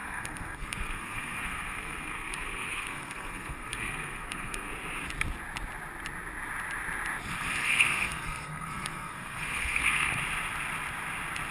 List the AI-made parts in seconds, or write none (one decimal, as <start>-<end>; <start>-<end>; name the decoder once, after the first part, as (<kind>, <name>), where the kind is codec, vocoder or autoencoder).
0.0-4.7 (codec, SNAC); 7.6-10.1